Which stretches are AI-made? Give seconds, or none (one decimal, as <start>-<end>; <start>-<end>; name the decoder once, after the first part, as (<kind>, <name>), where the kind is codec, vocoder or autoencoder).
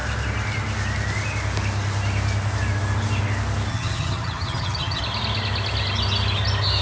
3.7-5.0 (vocoder, HiFi-GAN)